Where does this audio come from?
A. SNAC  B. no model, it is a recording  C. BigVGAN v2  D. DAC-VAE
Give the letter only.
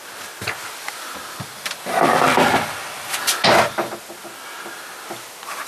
B